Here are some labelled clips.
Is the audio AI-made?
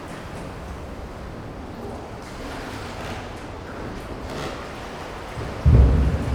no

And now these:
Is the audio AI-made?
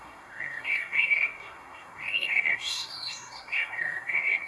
yes